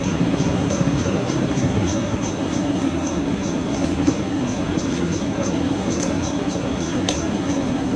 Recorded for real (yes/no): no